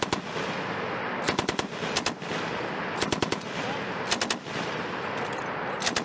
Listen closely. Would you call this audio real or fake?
real